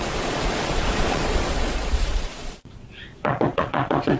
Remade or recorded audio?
remade